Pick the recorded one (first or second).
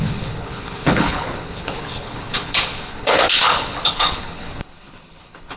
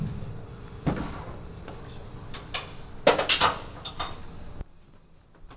second